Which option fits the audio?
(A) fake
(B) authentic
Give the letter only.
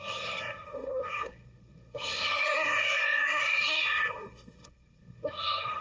A